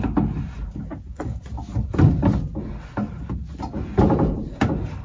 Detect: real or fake real